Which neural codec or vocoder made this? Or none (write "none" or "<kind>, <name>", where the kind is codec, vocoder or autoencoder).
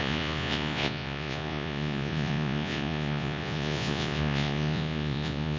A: vocoder, Vocos